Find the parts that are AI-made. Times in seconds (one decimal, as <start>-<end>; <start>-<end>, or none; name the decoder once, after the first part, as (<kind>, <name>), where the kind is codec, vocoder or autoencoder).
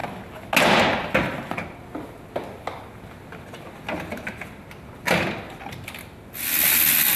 none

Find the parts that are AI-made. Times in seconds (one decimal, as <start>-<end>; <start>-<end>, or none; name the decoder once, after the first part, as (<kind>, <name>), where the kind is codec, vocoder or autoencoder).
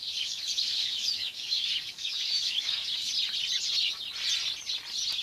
0.0-3.1 (codec, DAC)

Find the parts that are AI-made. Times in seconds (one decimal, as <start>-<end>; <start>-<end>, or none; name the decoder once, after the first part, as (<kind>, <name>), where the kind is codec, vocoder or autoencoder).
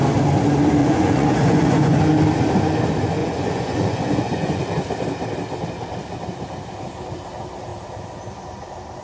0.8-2.0 (vocoder, Vocos); 3.2-4.6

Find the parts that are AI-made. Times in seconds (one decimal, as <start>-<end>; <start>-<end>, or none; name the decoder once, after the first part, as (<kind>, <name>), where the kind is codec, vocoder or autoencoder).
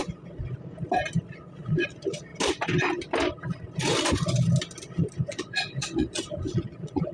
0.0-0.4 (vocoder, Vocos); 1.3-2.3; 5.3-7.1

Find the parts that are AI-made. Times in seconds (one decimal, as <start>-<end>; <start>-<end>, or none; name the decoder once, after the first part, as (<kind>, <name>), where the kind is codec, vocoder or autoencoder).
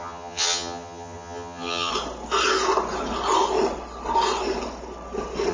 0.0-1.9 (vocoder, HiFi-GAN)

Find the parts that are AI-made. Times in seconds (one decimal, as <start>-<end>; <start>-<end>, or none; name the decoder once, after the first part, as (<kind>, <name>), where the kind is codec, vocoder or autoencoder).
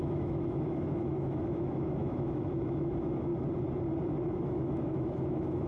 0.0-3.3 (autoencoder, DAC-VAE); 4.3-5.7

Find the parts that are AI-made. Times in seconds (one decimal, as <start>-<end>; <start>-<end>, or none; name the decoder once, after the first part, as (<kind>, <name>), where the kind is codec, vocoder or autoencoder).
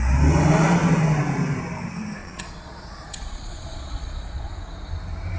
2.2-4.5 (vocoder, Vocos)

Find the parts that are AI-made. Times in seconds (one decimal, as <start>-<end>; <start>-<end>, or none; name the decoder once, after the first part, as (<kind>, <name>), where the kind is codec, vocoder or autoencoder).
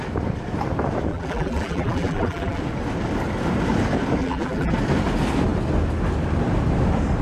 1.1-2.6 (vocoder, BigVGAN v2); 4.2-4.7